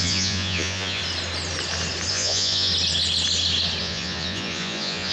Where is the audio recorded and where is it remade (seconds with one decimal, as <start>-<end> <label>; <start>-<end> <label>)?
0.0-1.0 remade; 1.0-2.1 recorded; 2.1-2.7 remade; 2.7-3.8 recorded; 3.8-5.1 remade